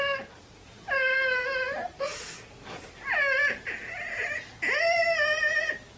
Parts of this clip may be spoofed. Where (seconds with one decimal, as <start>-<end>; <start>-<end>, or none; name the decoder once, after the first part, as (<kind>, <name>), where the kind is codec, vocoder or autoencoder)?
none